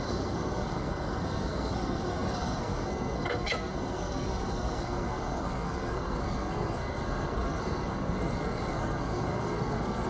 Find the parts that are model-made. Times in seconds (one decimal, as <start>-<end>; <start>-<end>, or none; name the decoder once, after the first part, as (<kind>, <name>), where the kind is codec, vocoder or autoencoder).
0.0-10.1 (codec, SNAC)